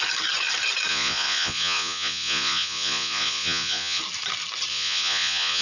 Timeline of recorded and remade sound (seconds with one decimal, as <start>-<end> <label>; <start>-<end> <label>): 0.0-0.9 recorded; 0.9-4.0 remade; 4.0-4.7 recorded; 4.7-5.6 remade